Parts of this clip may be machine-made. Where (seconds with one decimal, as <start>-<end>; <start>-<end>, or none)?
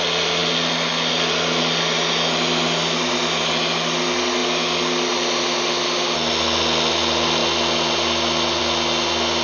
none